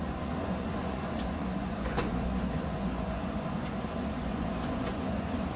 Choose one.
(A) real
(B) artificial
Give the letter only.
B